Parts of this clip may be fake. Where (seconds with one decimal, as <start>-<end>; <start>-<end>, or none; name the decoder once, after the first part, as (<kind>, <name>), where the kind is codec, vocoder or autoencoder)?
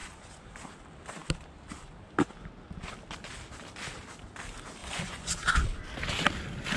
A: 0.0-0.5 (vocoder, Vocos); 4.8-5.3